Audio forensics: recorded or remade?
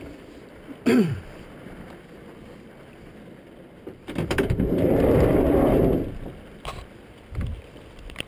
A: remade